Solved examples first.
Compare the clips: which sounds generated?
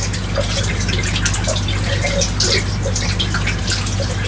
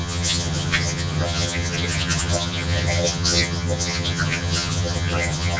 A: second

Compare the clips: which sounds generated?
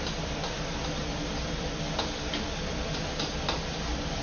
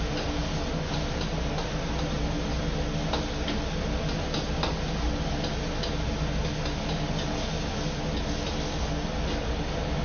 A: first